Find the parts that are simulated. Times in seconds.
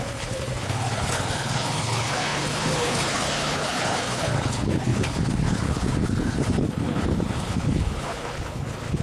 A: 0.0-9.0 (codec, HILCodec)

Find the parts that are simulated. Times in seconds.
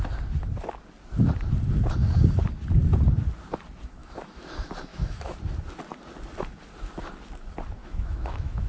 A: 4.0-4.5 (autoencoder, DAC-VAE); 4.9-5.4; 7.8-8.7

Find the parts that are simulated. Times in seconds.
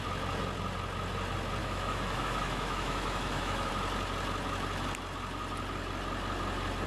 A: 1.6-3.7 (autoencoder, DAC-VAE)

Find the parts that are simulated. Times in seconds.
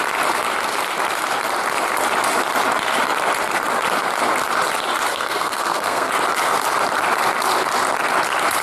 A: 5.1-6.1 (codec, SNAC)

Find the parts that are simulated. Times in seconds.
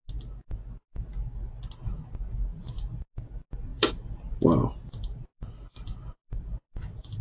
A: 2.5-3.0 (vocoder, BigVGAN v2); 3.7-7.2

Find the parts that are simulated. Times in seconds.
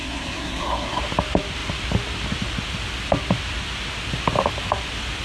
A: 0.0-1.0 (codec, SNAC)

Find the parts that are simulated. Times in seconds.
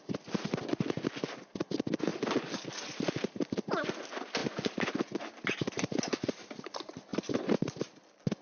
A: 2.1-4.0 (vocoder, BigVGAN v2); 7.1-7.7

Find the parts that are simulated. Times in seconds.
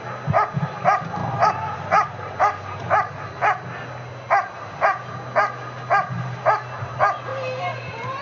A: 1.2-2.4 (vocoder, BigVGAN v2); 2.8-3.4; 7.3-8.2